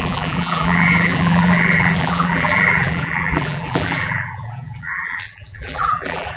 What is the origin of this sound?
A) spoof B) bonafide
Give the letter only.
A